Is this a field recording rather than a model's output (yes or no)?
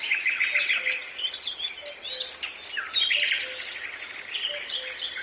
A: yes